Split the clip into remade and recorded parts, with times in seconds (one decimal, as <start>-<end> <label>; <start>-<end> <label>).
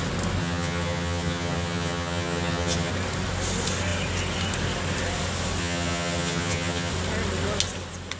0.0-0.4 recorded; 0.4-2.9 remade; 2.9-5.6 recorded; 5.6-6.9 remade; 6.9-8.2 recorded